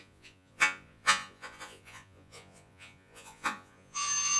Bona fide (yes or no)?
no